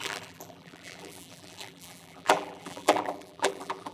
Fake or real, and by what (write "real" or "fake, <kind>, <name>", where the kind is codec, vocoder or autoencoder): fake, vocoder, BigVGAN v2